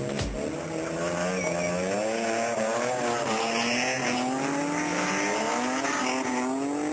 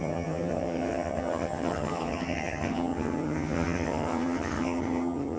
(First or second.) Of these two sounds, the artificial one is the second